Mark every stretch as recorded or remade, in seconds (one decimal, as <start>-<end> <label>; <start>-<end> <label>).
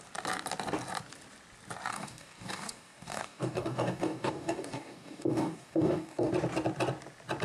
0.0-1.9 recorded; 1.9-6.3 remade; 6.3-7.4 recorded